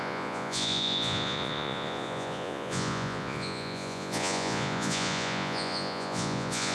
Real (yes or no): no